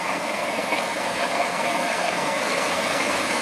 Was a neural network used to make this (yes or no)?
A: yes